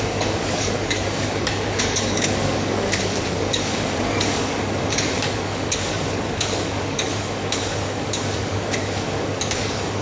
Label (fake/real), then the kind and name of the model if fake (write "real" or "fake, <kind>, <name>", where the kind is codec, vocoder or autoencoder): fake, codec, DAC